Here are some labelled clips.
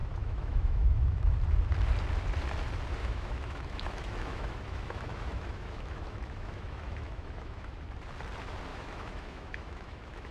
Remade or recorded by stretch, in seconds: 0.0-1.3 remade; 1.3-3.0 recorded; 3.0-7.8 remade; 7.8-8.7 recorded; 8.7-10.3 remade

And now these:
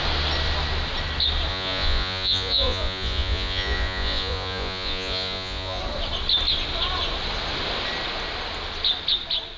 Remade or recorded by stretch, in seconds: 0.0-1.5 recorded; 1.5-5.8 remade; 5.8-9.6 recorded

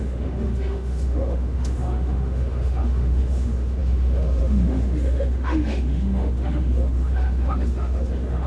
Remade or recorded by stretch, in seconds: 0.0-8.5 remade

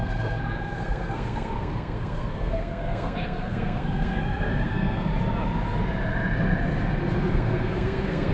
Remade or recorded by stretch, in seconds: 0.0-5.1 remade; 5.1-7.3 recorded; 7.3-8.3 remade